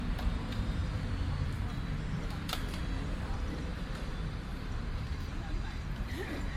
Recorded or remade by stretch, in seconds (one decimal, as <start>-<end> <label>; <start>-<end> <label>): 0.0-0.8 remade; 0.8-2.1 recorded; 2.1-2.8 remade; 2.8-3.3 recorded; 3.3-6.6 remade